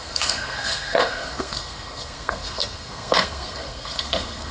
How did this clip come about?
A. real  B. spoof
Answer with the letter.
B